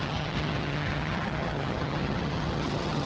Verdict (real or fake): fake